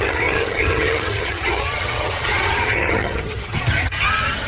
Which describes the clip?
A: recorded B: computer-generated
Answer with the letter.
B